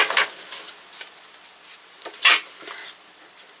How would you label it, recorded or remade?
recorded